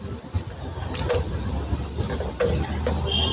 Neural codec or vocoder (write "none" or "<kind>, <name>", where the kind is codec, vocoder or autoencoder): none